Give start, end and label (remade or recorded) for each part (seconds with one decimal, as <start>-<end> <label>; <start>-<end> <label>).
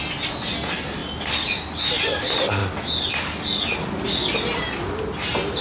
0.0-5.6 recorded